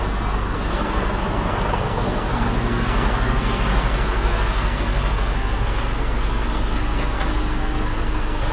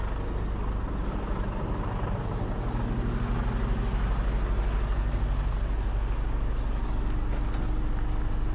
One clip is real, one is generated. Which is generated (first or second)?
first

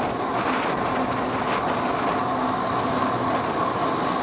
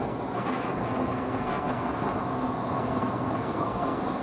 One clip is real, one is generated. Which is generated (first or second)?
second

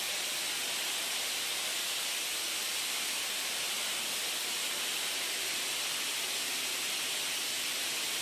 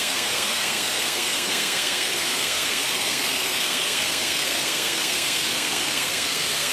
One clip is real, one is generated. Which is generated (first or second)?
second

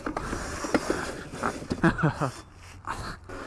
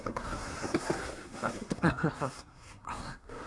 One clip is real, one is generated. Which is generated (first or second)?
second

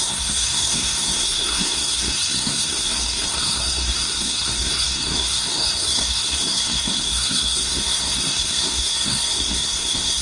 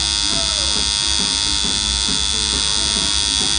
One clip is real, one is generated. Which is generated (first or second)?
first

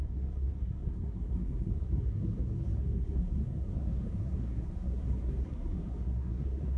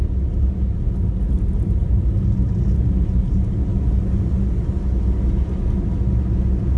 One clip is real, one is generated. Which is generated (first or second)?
first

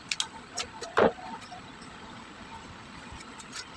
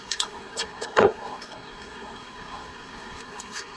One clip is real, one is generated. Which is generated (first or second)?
second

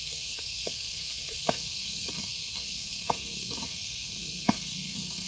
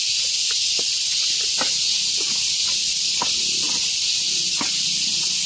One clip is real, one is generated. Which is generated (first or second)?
first